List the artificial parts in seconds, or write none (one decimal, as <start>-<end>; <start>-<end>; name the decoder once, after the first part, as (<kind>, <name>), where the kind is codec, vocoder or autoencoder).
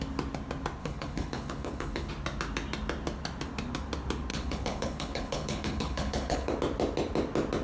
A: 0.8-2.1 (codec, HILCodec); 4.3-6.5